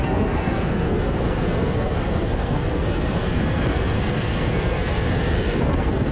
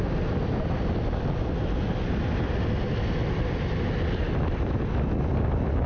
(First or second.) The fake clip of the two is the first